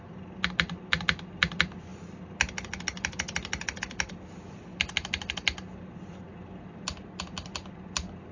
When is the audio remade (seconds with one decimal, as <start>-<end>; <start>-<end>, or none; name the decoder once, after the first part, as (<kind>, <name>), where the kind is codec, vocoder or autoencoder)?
none